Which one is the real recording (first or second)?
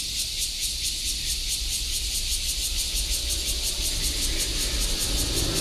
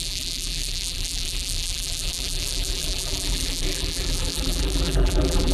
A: first